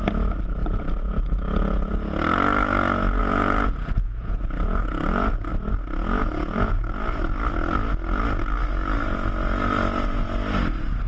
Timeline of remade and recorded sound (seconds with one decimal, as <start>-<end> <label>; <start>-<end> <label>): 0.0-0.6 recorded; 0.6-1.9 remade; 1.9-3.2 recorded; 3.2-5.5 remade; 5.5-6.2 recorded; 6.2-6.8 remade; 6.8-11.1 recorded